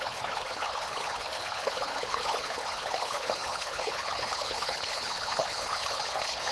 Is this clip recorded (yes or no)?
no